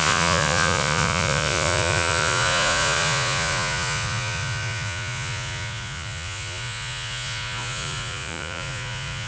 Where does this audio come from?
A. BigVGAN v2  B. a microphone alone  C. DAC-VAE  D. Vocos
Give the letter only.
D